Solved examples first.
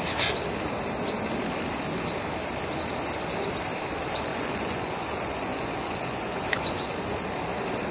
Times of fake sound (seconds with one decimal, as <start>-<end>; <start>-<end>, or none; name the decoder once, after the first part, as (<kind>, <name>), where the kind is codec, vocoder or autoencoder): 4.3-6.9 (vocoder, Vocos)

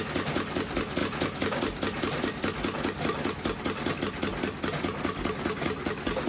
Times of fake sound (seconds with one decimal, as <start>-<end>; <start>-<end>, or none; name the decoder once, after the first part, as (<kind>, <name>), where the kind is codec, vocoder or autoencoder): none

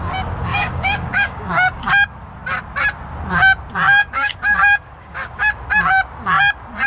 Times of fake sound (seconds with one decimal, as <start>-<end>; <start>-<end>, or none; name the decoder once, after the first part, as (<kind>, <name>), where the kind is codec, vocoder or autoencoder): 0.5-1.9 (codec, DAC); 4.0-5.5

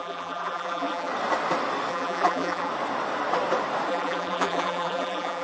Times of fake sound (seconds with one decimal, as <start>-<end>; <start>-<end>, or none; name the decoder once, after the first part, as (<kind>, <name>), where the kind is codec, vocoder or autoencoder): 0.0-1.1 (vocoder, BigVGAN v2); 1.9-2.7; 3.9-5.4

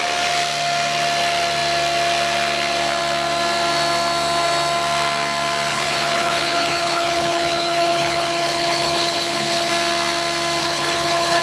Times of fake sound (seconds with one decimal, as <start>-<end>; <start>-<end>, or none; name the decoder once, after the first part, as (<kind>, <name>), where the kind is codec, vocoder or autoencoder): 5.7-9.7 (codec, HILCodec); 10.6-11.4

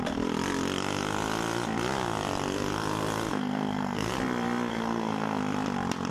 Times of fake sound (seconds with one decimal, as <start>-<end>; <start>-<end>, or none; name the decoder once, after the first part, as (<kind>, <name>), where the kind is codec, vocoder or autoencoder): 3.3-4.1 (codec, SNAC); 4.7-5.4